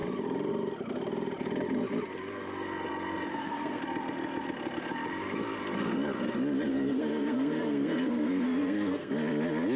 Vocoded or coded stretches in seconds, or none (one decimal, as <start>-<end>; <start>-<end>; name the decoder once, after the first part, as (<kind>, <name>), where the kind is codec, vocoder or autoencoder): 3.3-3.8 (codec, SNAC); 6.7-9.1